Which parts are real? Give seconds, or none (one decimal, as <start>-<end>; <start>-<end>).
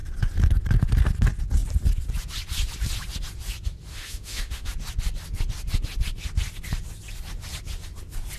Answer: 0.0-3.9; 4.7-8.4